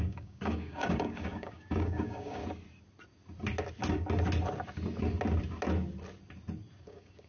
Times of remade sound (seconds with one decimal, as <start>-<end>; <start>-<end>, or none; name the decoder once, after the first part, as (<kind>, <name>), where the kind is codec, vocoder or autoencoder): 0.0-2.4 (codec, DAC); 6.8-7.3